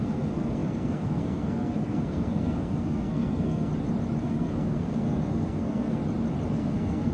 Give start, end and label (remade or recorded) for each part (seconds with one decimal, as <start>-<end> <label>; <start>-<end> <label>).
0.0-3.7 remade; 3.7-4.2 recorded; 4.2-6.0 remade; 6.0-6.5 recorded; 6.5-7.1 remade